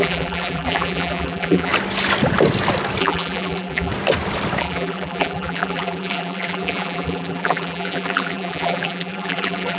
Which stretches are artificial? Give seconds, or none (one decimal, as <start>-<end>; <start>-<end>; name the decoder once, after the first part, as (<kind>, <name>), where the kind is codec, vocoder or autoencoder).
0.0-1.7 (vocoder, BigVGAN v2); 3.0-3.9; 4.6-9.8